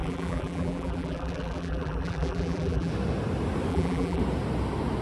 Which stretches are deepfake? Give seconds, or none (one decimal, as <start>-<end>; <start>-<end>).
0.0-2.9; 3.7-4.2